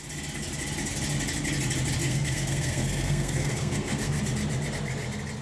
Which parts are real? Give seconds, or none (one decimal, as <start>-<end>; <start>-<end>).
0.0-2.0; 4.2-5.4